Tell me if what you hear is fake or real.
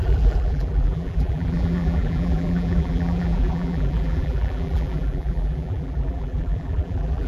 fake